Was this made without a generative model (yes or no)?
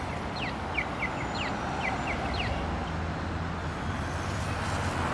yes